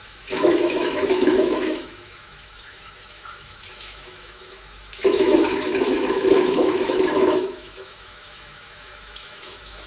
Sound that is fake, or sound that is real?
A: fake